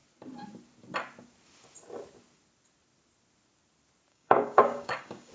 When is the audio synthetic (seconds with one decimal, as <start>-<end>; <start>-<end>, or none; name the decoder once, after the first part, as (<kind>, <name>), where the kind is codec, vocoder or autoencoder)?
4.1-5.3 (codec, DAC)